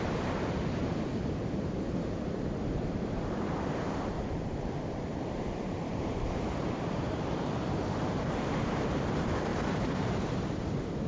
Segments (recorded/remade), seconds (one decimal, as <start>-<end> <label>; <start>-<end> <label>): 0.0-11.1 remade